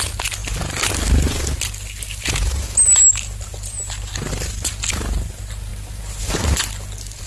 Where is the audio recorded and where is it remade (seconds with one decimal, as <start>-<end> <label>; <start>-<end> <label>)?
0.0-7.3 recorded